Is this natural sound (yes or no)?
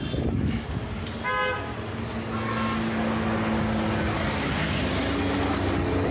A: yes